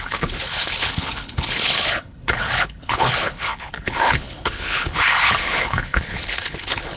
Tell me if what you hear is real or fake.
fake